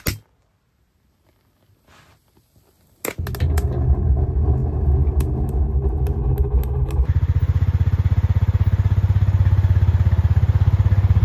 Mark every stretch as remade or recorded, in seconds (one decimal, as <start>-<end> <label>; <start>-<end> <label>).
0.0-11.2 recorded